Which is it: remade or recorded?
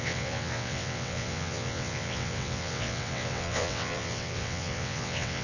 remade